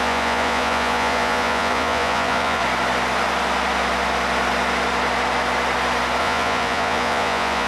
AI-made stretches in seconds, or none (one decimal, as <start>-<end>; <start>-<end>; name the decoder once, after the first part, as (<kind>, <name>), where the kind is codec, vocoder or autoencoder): 0.0-2.6 (vocoder, Vocos); 6.2-7.7